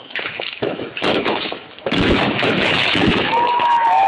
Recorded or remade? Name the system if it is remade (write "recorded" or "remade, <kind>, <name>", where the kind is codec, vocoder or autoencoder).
remade, autoencoder, DAC-VAE